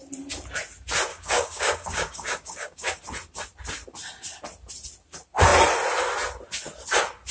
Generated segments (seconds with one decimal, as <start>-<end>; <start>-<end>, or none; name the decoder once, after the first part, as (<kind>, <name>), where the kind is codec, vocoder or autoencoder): 1.1-3.0 (codec, DAC)